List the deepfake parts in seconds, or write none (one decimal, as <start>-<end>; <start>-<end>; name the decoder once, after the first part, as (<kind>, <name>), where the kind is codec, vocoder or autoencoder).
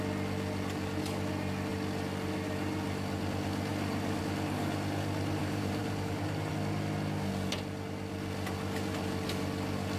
5.4-6.5 (vocoder, BigVGAN v2)